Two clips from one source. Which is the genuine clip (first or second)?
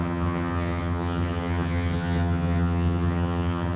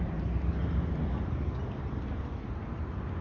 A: second